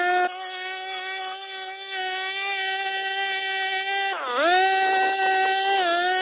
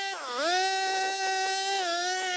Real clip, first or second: first